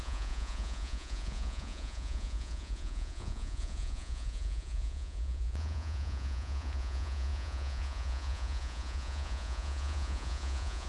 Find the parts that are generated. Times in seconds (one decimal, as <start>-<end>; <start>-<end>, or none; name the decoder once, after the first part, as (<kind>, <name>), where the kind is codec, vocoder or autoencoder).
0.0-10.9 (vocoder, Vocos)